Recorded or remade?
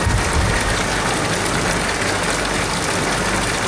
recorded